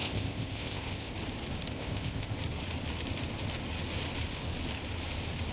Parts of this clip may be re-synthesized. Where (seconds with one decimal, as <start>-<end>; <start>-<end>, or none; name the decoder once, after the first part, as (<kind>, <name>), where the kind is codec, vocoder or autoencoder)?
0.0-1.1 (codec, ZipCodec); 1.7-2.4